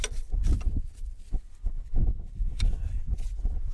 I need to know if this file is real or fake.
real